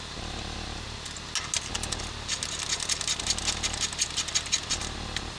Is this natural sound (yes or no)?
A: yes